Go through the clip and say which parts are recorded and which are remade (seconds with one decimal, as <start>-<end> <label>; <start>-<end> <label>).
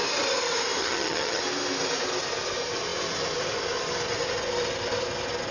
0.0-0.8 recorded; 0.8-1.4 remade; 1.4-5.5 recorded